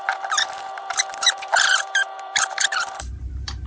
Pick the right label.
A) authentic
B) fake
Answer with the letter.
B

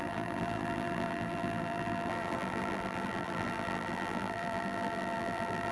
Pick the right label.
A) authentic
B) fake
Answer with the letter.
B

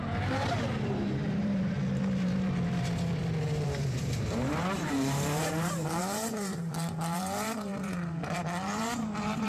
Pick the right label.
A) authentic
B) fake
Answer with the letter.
B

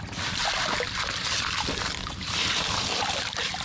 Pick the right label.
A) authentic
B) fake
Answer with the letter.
A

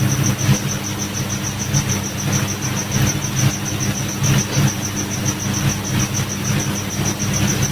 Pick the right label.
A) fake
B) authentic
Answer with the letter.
B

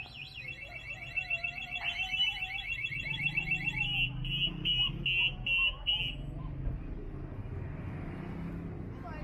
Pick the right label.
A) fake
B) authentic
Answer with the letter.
B